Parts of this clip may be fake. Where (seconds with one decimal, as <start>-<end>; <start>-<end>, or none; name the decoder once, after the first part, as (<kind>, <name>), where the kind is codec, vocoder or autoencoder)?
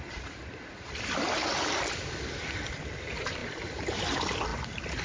none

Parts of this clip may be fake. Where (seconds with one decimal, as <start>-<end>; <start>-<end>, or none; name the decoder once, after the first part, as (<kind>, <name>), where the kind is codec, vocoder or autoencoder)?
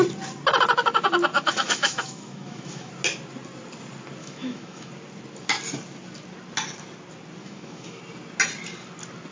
1.3-2.9 (autoencoder, DAC-VAE); 4.2-4.9; 7.4-8.0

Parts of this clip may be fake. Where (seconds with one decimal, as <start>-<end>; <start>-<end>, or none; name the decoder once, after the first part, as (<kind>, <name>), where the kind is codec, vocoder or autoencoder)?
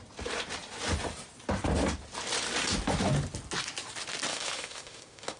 4.3-5.4 (autoencoder, DAC-VAE)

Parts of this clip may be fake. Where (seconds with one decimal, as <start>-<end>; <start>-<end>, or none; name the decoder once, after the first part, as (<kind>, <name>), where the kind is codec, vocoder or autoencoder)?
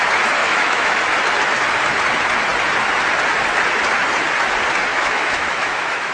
0.4-1.0 (autoencoder, DAC-VAE); 4.9-6.1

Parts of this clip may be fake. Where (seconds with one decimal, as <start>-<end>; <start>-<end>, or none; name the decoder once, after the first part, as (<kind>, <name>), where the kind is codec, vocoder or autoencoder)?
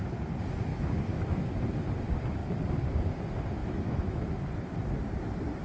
0.7-1.5 (autoencoder, DAC-VAE); 3.6-4.2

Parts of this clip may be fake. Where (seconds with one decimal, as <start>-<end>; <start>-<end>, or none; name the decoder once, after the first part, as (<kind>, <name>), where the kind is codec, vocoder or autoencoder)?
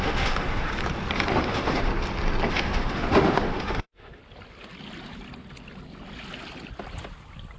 0.0-0.7 (autoencoder, DAC-VAE); 1.3-1.9; 2.5-4.2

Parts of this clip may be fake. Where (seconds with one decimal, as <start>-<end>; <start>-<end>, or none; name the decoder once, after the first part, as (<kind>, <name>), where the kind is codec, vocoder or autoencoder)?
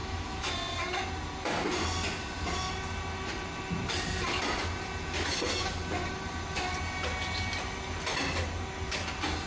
0.0-0.5 (autoencoder, DAC-VAE)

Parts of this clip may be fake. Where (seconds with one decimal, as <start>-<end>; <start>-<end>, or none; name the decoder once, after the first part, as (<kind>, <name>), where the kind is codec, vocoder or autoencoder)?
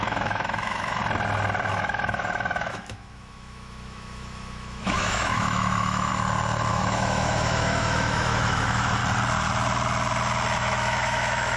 0.0-1.0 (autoencoder, DAC-VAE); 1.7-6.1; 6.7-9.0; 10.6-11.6